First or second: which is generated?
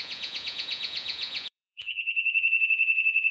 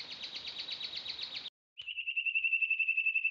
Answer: first